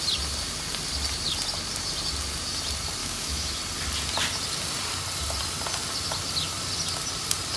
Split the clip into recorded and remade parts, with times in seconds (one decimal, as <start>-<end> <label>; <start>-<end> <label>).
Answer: 0.0-3.0 recorded; 3.0-3.6 remade; 3.6-7.6 recorded